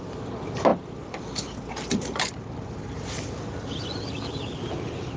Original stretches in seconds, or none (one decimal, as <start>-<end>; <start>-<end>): 0.0-5.2